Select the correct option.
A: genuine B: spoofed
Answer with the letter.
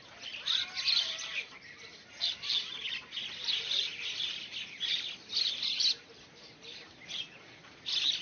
A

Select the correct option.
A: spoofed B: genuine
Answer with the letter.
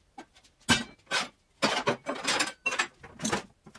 B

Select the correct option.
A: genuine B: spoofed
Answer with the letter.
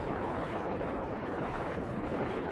B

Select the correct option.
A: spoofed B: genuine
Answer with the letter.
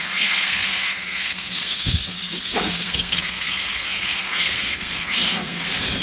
A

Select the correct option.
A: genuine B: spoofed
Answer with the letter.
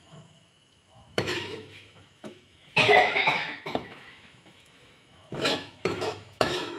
B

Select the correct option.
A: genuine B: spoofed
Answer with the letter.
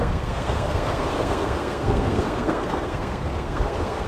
B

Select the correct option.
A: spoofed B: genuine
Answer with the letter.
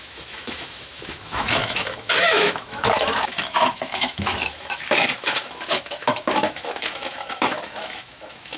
A